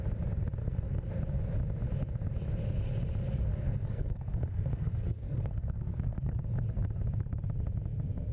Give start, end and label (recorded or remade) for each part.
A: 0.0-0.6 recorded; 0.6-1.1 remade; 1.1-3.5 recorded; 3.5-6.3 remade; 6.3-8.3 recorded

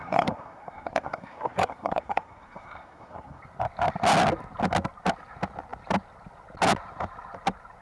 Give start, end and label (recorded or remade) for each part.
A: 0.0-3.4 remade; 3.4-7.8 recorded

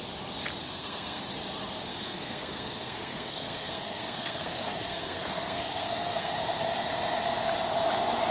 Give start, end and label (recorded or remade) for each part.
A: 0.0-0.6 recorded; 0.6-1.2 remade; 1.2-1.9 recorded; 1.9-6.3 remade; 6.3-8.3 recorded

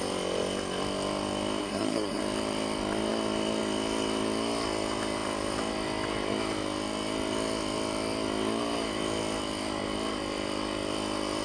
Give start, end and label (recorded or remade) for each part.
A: 0.0-1.6 recorded; 1.6-2.2 remade; 2.2-11.4 recorded